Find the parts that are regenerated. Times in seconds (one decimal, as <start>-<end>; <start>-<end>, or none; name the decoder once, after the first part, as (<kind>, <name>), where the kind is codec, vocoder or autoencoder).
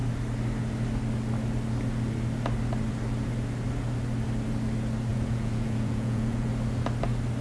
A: 5.1-6.5 (vocoder, Vocos)